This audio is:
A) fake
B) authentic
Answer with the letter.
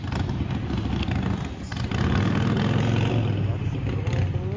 B